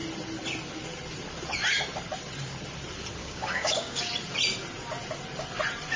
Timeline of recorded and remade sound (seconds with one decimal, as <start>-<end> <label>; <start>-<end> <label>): 0.0-3.2 recorded; 3.2-4.1 remade; 4.1-6.0 recorded

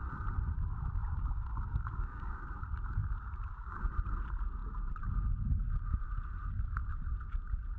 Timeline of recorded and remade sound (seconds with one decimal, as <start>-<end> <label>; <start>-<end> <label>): 0.0-1.0 recorded; 1.0-2.3 remade; 2.3-3.0 recorded; 3.0-3.8 remade; 3.8-7.8 recorded

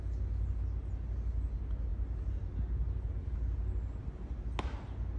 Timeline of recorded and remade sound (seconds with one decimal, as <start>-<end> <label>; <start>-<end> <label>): 0.0-5.2 recorded